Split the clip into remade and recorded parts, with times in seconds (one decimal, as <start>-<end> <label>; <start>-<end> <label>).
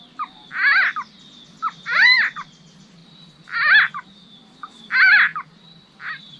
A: 0.0-3.0 remade; 3.0-4.7 recorded; 4.7-6.4 remade